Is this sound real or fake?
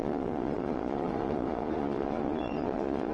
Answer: fake